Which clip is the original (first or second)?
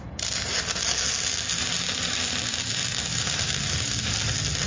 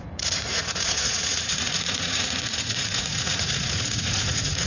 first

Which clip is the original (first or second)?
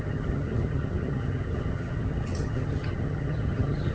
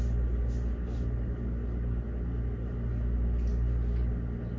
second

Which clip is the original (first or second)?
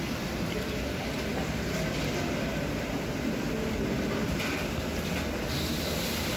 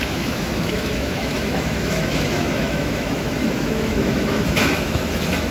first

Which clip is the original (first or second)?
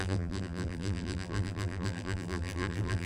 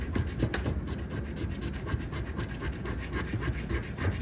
second